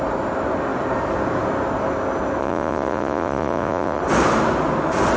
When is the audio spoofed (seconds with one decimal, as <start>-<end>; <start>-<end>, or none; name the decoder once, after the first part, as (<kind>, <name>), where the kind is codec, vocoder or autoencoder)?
2.4-4.0 (vocoder, Vocos)